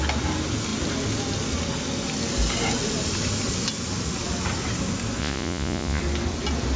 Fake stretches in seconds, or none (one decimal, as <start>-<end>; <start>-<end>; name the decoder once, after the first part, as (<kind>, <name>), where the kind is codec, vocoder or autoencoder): 5.2-6.0 (vocoder, Vocos)